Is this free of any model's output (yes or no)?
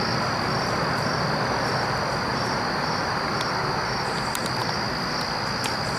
yes